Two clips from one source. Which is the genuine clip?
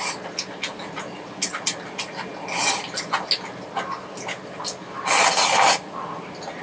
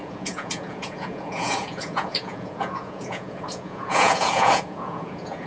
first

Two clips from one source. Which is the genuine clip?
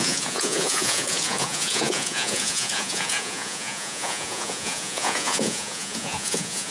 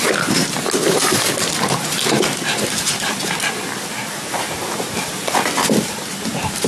second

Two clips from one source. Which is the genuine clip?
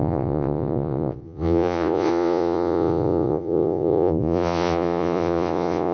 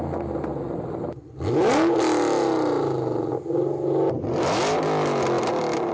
second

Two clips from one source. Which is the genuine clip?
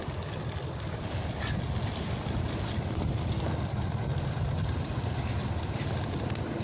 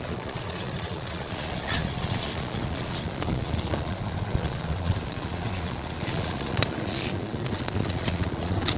first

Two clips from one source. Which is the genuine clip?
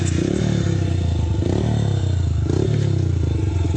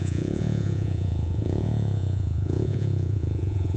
first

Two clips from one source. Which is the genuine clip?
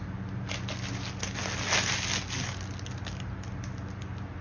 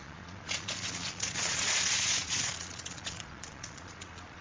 first